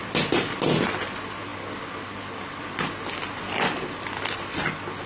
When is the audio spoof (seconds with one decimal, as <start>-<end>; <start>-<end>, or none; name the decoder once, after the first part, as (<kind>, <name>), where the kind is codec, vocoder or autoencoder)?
none